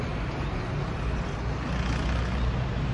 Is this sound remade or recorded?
recorded